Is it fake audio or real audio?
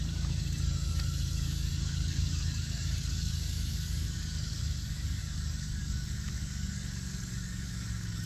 fake